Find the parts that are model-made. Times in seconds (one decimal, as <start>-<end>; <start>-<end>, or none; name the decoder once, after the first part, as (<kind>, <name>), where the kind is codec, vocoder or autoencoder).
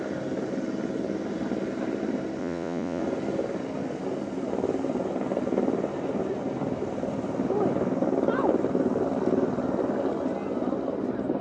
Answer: 2.4-3.0 (vocoder, Vocos)